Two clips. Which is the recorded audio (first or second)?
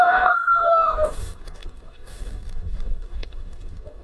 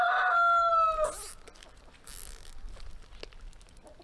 second